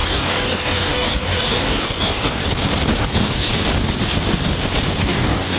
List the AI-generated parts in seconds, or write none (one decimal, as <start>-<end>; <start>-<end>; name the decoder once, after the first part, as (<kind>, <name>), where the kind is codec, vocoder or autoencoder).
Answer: 0.0-2.4 (codec, DAC); 3.0-3.5; 5.0-5.6